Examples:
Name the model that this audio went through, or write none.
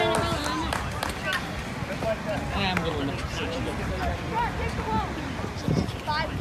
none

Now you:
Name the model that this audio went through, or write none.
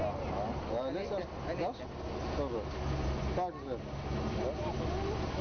none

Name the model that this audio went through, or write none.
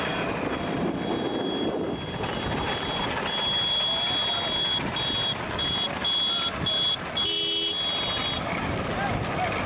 none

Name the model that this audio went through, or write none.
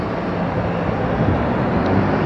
none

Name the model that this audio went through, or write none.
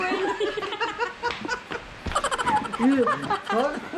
none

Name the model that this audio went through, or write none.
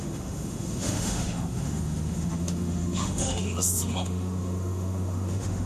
autoencoder, DAC-VAE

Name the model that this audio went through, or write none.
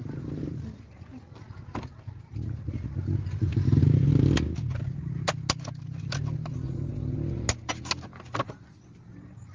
none